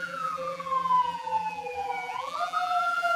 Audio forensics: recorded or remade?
remade